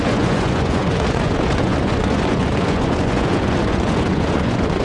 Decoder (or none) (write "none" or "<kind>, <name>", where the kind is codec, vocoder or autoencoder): vocoder, Vocos